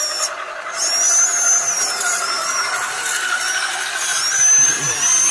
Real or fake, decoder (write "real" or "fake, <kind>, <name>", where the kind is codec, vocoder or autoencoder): real